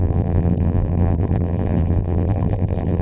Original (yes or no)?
no